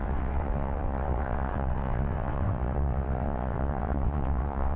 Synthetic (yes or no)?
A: yes